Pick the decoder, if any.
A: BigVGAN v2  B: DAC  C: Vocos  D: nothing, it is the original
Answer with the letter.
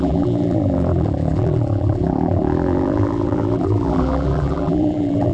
A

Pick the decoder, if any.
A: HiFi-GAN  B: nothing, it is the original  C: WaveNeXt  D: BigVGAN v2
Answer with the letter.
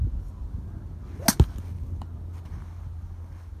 B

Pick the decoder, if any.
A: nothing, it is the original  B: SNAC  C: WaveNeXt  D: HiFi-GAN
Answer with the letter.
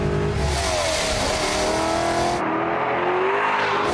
A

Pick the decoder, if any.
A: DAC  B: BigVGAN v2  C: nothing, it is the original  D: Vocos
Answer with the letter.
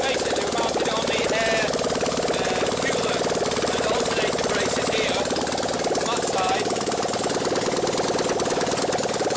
C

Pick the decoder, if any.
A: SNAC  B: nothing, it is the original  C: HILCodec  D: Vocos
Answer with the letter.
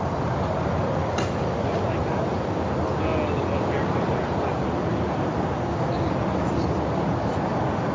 B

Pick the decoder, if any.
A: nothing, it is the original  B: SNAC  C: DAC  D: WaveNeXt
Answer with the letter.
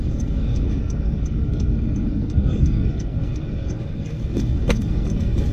B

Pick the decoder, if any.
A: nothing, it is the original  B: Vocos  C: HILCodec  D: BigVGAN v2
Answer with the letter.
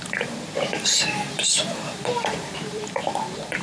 D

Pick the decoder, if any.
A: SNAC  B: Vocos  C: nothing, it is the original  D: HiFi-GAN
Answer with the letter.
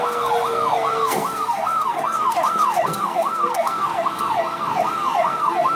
A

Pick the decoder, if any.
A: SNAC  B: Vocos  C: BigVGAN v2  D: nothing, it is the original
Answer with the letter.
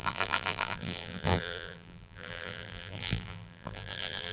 C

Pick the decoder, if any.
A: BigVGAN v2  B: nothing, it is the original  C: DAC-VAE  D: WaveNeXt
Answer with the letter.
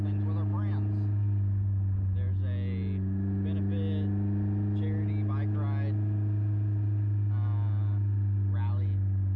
B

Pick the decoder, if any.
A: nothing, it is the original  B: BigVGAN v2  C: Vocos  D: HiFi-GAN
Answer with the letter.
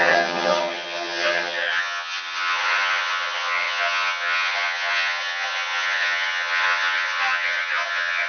D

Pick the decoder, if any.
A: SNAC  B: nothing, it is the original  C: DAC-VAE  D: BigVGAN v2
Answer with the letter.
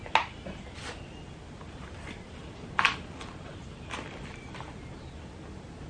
B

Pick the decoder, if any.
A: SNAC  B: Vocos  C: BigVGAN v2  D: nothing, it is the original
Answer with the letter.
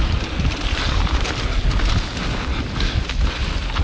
D